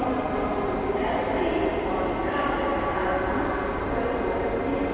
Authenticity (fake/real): real